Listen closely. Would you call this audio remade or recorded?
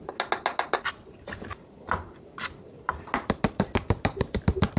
recorded